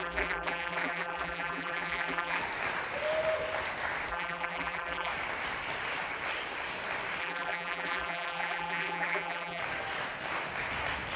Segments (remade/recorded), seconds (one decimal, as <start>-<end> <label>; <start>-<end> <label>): 0.0-2.4 remade; 2.4-4.1 recorded; 4.1-5.1 remade; 5.1-7.2 recorded; 7.2-9.6 remade; 9.6-11.2 recorded